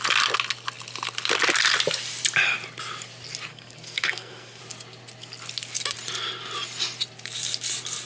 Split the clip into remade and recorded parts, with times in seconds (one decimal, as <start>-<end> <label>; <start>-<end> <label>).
0.0-3.5 recorded; 3.5-4.6 remade; 4.6-8.1 recorded